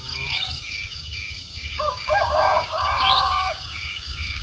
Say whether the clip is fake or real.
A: fake